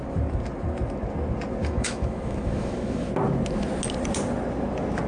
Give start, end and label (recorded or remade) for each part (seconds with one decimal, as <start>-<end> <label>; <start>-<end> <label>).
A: 0.0-1.6 recorded; 1.6-3.1 remade; 3.1-5.1 recorded